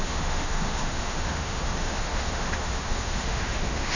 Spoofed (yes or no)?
yes